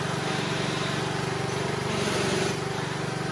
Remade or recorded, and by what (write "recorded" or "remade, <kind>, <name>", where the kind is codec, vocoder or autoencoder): remade, vocoder, BigVGAN v2